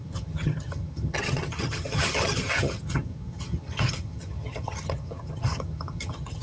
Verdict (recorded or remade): remade